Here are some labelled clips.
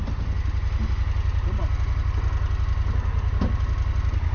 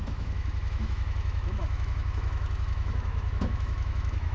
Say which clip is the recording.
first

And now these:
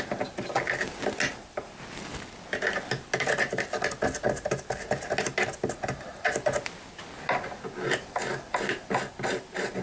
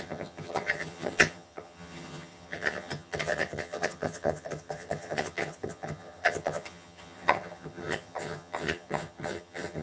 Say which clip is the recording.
first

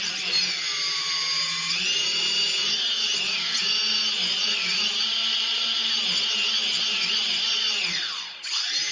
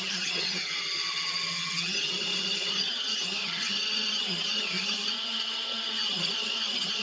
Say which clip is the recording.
first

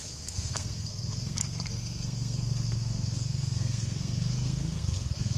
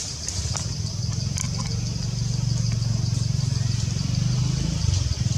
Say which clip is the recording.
second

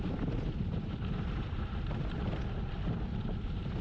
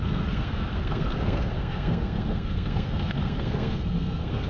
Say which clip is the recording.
first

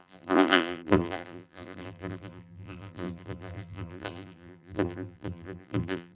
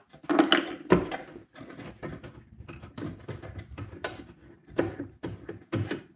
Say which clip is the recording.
second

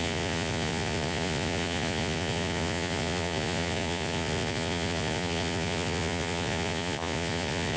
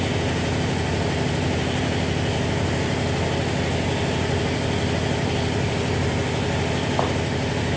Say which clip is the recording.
second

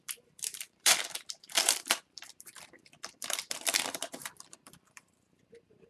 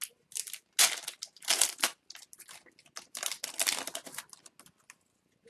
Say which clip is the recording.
second